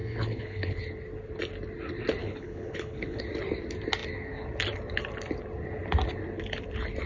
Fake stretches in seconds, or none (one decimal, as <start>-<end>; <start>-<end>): 0.0-0.8; 2.2-3.2